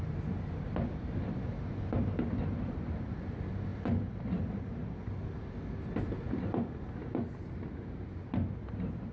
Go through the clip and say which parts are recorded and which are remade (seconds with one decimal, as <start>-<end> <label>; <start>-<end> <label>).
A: 0.0-9.1 recorded